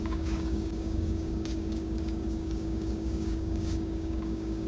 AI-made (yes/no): yes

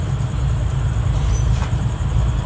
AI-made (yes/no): yes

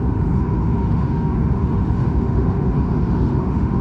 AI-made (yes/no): yes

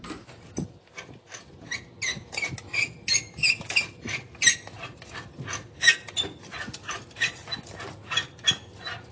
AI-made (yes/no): no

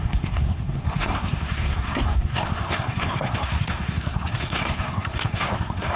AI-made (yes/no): yes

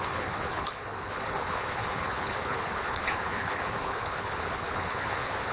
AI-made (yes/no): yes